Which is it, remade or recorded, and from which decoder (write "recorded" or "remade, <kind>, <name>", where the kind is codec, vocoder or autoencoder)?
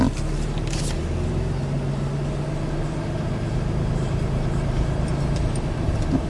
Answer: recorded